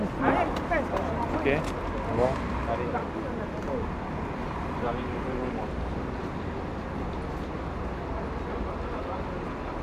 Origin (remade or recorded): recorded